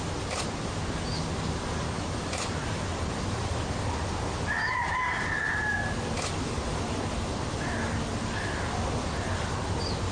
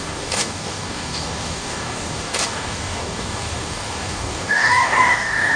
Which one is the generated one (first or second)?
second